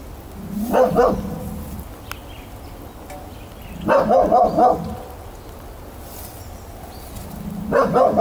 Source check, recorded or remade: recorded